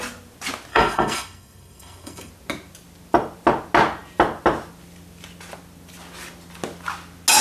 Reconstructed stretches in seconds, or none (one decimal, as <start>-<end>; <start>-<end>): 0.7-2.3